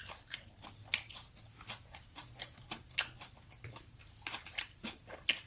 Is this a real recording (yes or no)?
yes